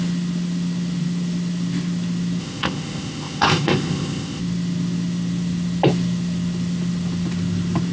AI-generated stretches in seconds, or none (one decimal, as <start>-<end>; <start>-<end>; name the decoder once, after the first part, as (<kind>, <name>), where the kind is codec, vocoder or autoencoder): 2.4-4.4 (codec, ZipCodec)